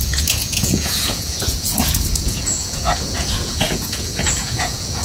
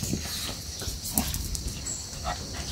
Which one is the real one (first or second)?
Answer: second